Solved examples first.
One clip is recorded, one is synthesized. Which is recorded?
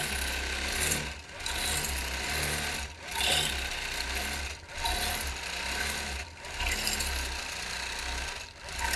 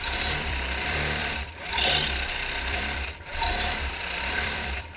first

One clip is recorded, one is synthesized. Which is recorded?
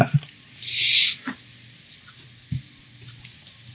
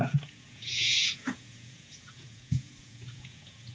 first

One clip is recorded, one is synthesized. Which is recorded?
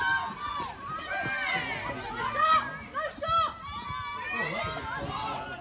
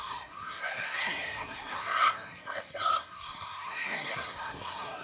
first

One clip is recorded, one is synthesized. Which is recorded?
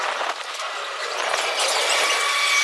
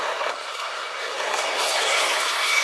first